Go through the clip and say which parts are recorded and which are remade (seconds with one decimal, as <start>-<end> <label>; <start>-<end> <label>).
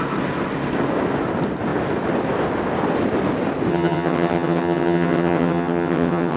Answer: 0.0-3.7 recorded; 3.7-6.4 remade